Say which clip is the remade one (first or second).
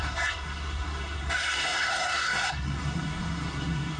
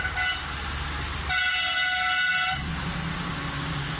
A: first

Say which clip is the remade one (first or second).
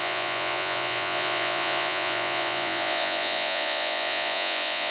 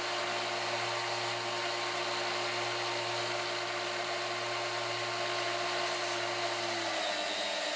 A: first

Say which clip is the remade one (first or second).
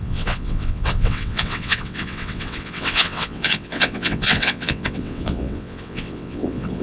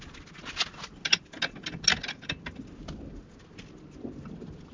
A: first